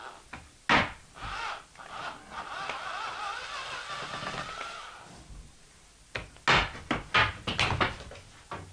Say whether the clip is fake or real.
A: real